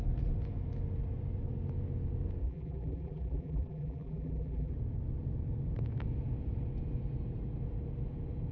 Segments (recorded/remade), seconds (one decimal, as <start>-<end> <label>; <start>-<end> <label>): 0.0-2.4 recorded; 2.4-4.7 remade; 4.7-8.5 recorded